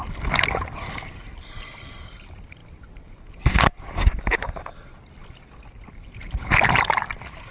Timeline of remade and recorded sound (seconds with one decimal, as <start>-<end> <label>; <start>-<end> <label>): 0.0-7.5 recorded